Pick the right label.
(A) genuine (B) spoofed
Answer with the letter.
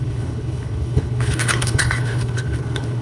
B